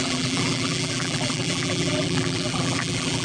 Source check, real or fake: fake